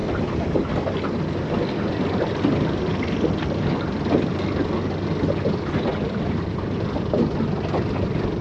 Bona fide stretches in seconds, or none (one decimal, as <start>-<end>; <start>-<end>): 0.0-5.9